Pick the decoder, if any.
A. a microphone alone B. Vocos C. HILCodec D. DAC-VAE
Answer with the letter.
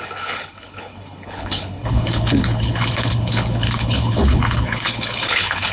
C